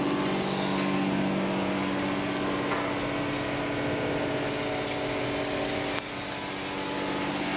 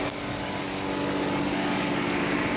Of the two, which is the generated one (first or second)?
second